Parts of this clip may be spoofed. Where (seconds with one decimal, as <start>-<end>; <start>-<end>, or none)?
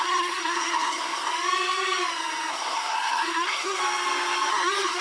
0.0-1.3; 2.5-3.8; 4.5-5.0